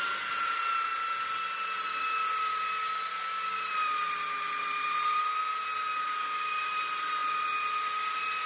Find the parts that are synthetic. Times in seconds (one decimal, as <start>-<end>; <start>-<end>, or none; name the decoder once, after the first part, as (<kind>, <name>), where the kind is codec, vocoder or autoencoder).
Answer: 3.1-3.6 (codec, DAC); 6.2-6.8